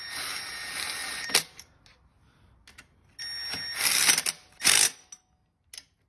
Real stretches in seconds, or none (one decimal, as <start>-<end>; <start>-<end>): 0.0-6.1